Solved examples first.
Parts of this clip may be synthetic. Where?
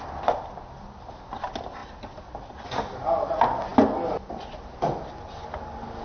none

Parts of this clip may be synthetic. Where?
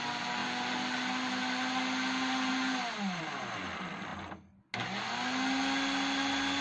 none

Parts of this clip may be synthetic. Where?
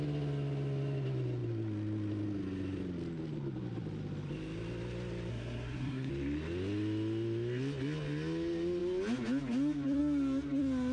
5.3-6.1 (codec, SNAC)